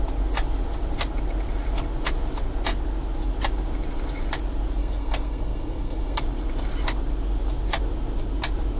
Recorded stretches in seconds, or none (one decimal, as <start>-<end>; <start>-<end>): 0.0-4.8; 6.2-8.8